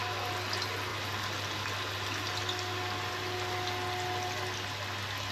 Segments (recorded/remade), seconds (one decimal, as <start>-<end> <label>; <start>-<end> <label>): 0.0-5.3 recorded